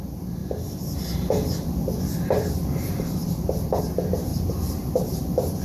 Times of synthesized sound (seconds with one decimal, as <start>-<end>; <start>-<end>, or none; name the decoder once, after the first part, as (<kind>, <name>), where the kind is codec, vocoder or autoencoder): 0.4-3.8 (vocoder, BigVGAN v2); 4.3-5.6